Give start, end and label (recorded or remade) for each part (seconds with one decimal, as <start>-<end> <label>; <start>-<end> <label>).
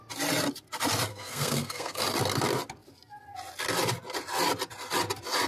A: 0.0-1.1 recorded; 1.1-2.0 remade; 2.0-5.5 recorded